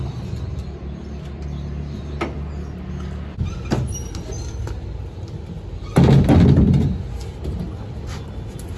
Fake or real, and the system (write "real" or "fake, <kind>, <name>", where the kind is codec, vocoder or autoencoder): real